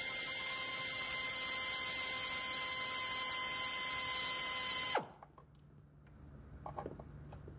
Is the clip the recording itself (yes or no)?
yes